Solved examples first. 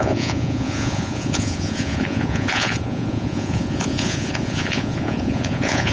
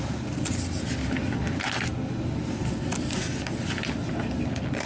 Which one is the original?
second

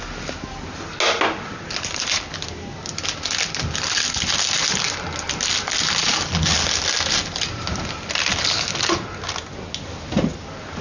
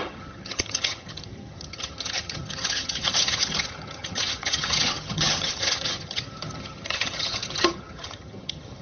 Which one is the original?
first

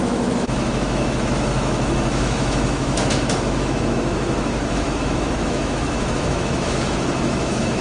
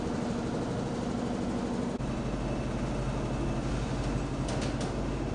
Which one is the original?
second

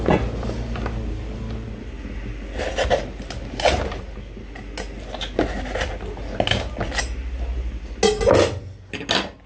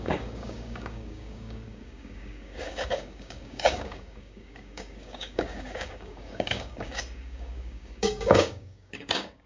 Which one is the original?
first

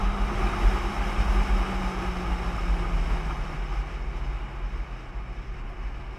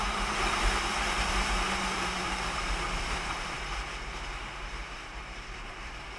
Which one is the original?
first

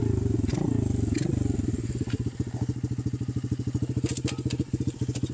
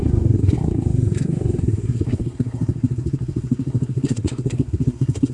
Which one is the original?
first